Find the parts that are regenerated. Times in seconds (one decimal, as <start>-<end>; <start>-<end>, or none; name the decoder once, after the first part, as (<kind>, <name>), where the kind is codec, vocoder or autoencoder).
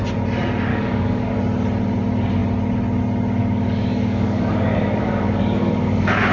0.7-1.4 (codec, DAC); 3.4-6.3